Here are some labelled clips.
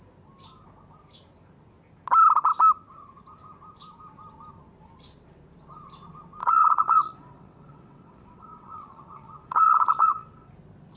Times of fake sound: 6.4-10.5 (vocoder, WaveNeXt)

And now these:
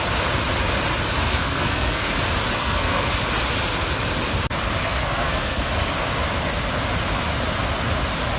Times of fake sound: 1.3-2.1 (codec, SNAC); 2.6-3.1; 4.8-5.6

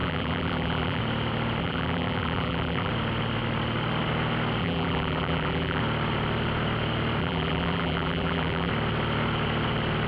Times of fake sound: 0.0-1.0 (vocoder, BigVGAN v2); 1.6-2.9; 4.6-5.8; 7.2-8.7